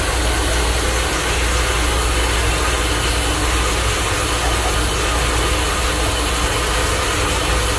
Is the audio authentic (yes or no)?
yes